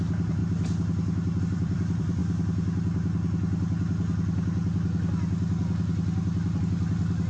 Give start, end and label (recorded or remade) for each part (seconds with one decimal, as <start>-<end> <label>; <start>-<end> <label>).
0.0-0.4 remade; 0.4-1.4 recorded; 1.4-2.2 remade; 2.2-6.6 recorded; 6.6-7.3 remade